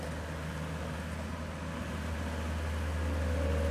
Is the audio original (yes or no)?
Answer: yes